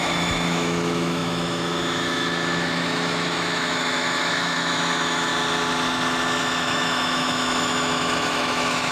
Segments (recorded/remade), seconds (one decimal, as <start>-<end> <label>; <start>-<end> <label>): 0.0-5.3 remade; 5.3-6.4 recorded; 6.4-8.9 remade